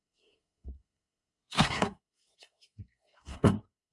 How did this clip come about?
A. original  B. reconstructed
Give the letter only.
B